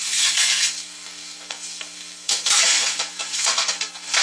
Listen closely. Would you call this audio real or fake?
fake